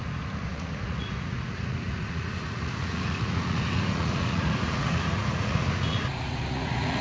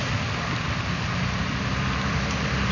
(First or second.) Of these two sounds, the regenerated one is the first